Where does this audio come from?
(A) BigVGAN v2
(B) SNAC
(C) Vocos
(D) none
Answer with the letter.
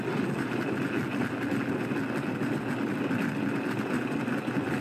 D